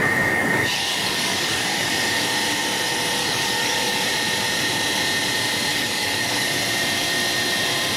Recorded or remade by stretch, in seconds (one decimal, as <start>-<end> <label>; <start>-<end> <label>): 0.0-1.9 remade; 1.9-3.2 recorded; 3.2-4.0 remade; 4.0-5.7 recorded; 5.7-6.5 remade; 6.5-8.0 recorded